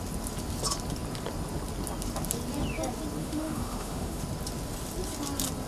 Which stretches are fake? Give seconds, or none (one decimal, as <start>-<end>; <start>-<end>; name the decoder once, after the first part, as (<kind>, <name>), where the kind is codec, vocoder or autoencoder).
3.2-4.2 (autoencoder, DAC-VAE)